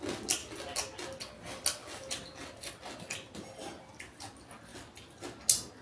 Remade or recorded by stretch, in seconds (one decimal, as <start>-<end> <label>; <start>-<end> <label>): 0.0-5.8 recorded